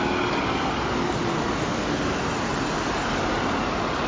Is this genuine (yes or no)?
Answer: yes